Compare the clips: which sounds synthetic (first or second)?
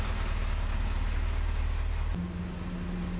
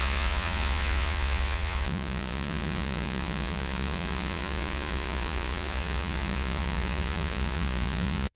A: second